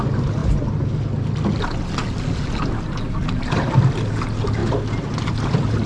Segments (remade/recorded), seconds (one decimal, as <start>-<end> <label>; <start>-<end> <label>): 0.0-5.9 recorded